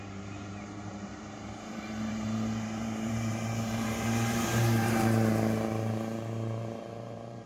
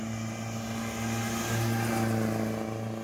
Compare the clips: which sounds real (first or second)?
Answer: second